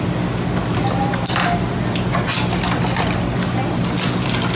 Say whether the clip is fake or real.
real